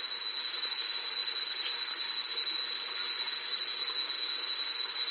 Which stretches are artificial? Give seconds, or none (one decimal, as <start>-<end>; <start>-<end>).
none